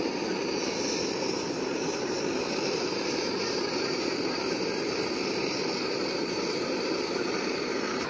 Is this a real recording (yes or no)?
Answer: no